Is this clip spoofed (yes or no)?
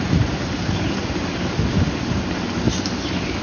no